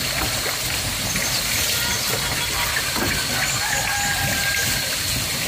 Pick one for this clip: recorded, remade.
recorded